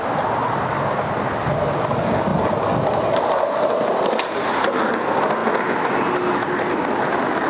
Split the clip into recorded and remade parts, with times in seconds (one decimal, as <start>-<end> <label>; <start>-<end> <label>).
0.0-7.5 recorded